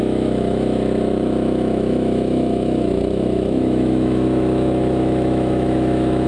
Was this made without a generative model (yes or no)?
no